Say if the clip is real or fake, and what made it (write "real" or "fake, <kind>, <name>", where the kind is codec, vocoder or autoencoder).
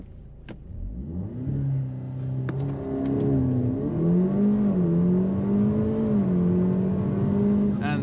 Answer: real